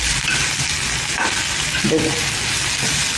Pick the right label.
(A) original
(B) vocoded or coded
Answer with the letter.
A